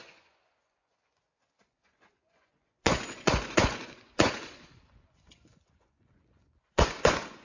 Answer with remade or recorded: remade